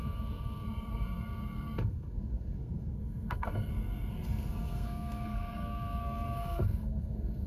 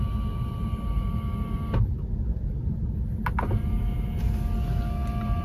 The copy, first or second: first